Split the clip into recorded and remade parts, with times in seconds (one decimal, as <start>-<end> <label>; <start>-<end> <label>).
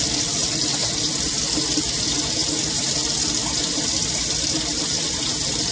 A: 0.0-5.7 recorded